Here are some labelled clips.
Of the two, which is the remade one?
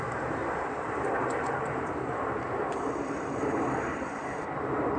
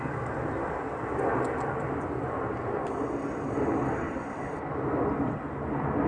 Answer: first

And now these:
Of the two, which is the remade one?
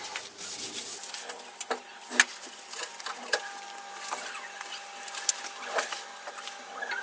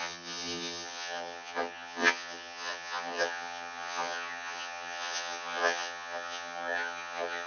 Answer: second